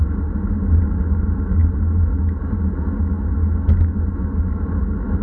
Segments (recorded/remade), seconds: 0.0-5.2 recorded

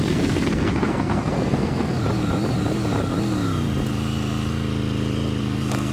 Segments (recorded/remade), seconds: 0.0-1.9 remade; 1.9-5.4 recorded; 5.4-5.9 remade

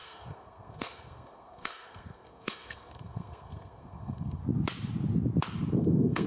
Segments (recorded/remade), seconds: 0.0-4.4 remade; 4.4-5.8 recorded; 5.8-6.3 remade

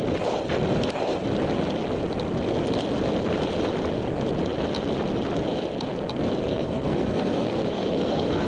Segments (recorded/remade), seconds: 0.0-6.5 recorded; 6.5-8.5 remade